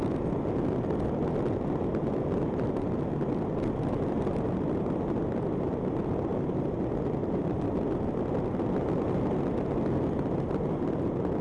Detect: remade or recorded recorded